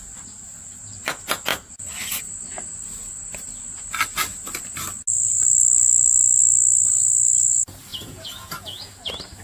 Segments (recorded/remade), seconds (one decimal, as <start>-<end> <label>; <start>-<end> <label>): 0.0-7.9 recorded; 7.9-9.0 remade; 9.0-9.4 recorded